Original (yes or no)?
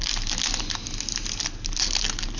yes